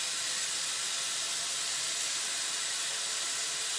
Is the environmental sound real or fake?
real